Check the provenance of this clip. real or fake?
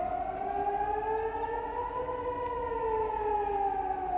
real